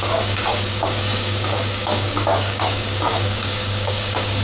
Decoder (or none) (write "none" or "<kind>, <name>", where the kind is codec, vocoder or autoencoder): codec, DAC